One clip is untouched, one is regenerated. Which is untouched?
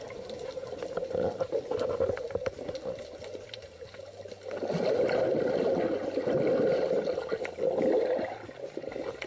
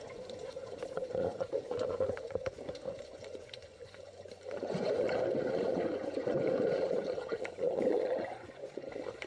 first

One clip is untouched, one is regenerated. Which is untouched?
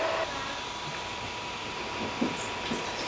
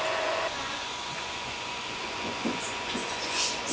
first